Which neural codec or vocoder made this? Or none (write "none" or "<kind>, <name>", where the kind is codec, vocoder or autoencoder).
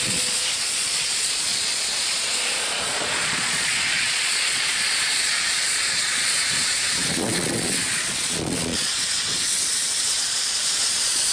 vocoder, Vocos